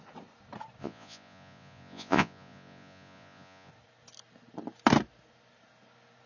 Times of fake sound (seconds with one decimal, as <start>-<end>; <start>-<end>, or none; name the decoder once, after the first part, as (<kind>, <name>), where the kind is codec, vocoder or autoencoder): 0.8-3.7 (vocoder, Vocos)